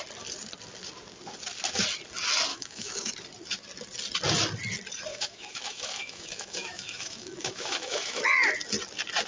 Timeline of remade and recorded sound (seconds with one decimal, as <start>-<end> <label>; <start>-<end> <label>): 0.0-2.5 recorded; 2.5-3.1 remade; 3.1-5.1 recorded; 5.1-8.2 remade; 8.2-9.3 recorded